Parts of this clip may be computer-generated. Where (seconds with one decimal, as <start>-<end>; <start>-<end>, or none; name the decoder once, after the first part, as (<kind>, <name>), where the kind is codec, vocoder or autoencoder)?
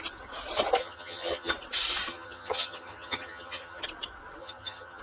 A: 0.8-1.5 (vocoder, HiFi-GAN); 2.1-3.8; 4.4-5.0